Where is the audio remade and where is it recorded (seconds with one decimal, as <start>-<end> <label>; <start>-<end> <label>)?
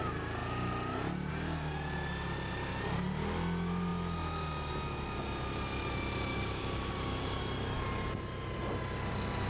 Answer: 0.0-6.3 recorded; 6.3-7.4 remade; 7.4-9.5 recorded